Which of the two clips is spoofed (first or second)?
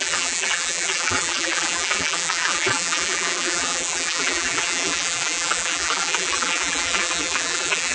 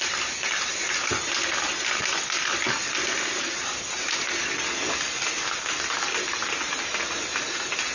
first